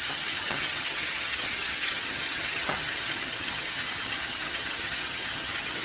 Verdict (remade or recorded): remade